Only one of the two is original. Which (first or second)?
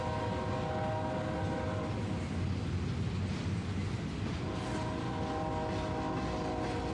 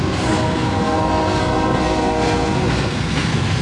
first